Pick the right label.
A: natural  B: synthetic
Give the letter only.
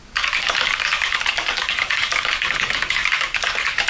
B